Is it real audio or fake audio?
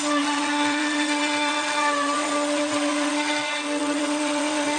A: fake